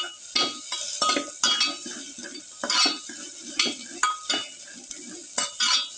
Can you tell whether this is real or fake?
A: real